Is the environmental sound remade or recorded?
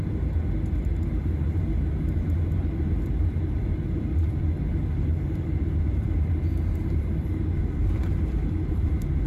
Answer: remade